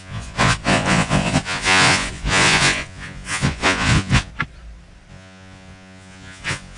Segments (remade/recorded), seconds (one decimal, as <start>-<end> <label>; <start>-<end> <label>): 0.0-4.3 remade; 4.3-5.1 recorded; 5.1-6.8 remade